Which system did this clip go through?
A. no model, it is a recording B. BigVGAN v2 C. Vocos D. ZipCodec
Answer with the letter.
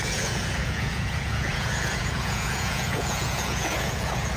C